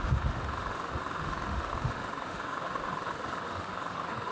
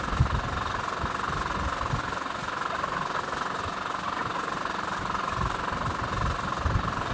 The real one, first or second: second